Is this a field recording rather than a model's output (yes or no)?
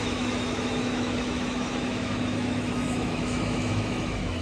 no